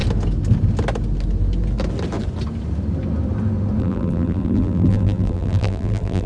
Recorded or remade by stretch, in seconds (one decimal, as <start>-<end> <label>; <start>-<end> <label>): 0.0-3.8 recorded; 3.8-6.3 remade